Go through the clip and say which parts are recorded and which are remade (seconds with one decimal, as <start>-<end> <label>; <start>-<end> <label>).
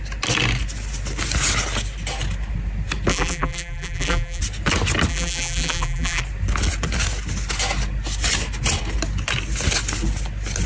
0.0-3.1 recorded; 3.1-4.4 remade; 4.4-5.1 recorded; 5.1-6.2 remade; 6.2-10.7 recorded